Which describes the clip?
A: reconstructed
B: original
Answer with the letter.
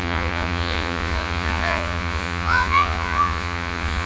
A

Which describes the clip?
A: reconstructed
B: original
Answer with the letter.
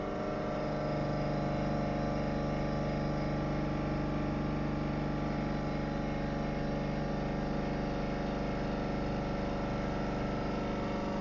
B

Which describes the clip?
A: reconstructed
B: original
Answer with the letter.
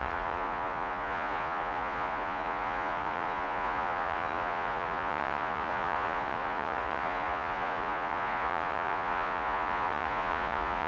A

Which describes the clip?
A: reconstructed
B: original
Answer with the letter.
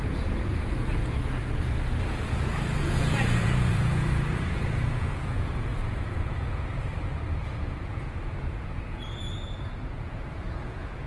A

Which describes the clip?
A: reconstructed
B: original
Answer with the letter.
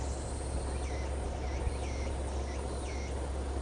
B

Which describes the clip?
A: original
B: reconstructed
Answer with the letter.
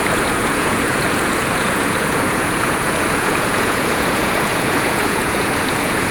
B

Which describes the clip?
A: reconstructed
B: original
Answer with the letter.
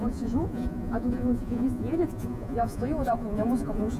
A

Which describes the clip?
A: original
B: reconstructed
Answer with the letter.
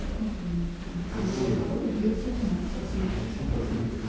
A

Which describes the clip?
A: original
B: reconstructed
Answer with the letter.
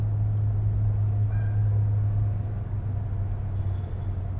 A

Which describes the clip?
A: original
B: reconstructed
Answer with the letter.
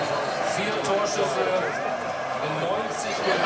A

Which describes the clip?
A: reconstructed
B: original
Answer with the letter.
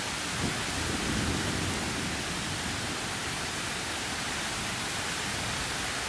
B